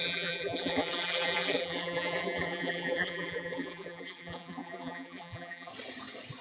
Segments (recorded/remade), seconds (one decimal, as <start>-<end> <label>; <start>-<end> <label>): 0.0-5.7 remade; 5.7-6.4 recorded

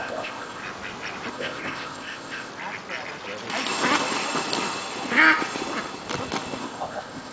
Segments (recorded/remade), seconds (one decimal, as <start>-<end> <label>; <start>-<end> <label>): 0.0-0.6 remade; 0.6-1.3 recorded; 1.3-2.5 remade; 2.5-6.6 recorded; 6.6-7.3 remade

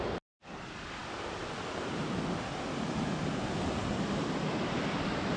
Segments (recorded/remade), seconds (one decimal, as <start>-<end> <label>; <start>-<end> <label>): 0.0-5.4 recorded

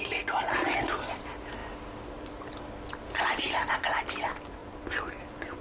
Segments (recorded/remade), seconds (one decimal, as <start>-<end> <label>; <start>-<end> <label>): 0.0-5.6 recorded

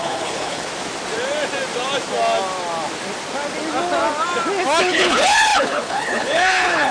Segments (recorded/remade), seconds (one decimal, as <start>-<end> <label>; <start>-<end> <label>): 0.0-0.7 remade; 0.7-4.8 recorded; 4.8-6.9 remade

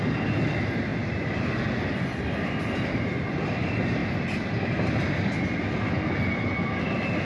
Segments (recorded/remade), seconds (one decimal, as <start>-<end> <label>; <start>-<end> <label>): 0.0-7.2 recorded